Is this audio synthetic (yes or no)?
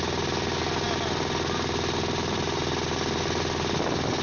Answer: no